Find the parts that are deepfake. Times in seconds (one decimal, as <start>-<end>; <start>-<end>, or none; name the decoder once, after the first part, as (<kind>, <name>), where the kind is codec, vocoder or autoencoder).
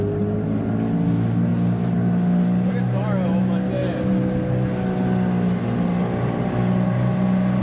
none